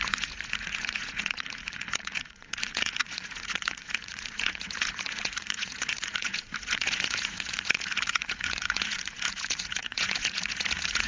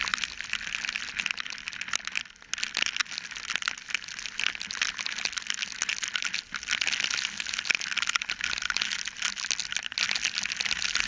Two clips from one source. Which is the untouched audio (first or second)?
second